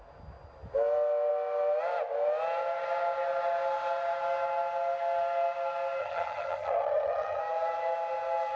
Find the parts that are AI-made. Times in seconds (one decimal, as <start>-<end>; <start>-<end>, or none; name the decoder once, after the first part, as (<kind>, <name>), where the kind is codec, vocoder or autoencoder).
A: 6.0-7.4 (vocoder, HiFi-GAN)